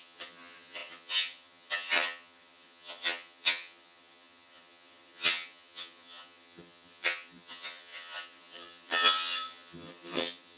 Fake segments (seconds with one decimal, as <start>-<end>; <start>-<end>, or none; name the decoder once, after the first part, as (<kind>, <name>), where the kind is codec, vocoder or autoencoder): 0.0-10.6 (vocoder, HiFi-GAN)

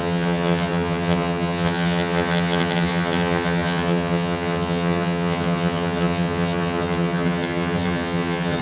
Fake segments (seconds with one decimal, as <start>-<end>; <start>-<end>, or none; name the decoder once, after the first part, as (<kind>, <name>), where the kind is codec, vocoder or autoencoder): 0.0-8.6 (vocoder, HiFi-GAN)

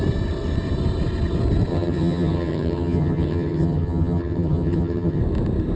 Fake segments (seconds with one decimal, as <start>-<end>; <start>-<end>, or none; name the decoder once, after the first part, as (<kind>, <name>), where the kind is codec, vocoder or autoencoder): 1.7-5.2 (vocoder, HiFi-GAN)

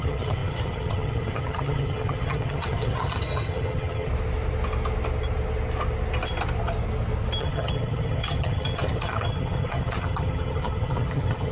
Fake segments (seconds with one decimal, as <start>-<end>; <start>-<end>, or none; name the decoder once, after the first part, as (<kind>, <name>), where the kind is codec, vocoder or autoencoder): 0.0-4.1 (vocoder, HiFi-GAN); 7.4-11.5

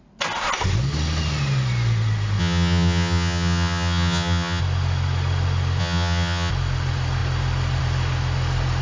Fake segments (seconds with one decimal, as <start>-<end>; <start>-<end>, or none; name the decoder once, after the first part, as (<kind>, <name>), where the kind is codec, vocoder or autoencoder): 2.4-4.6 (vocoder, HiFi-GAN); 5.8-6.5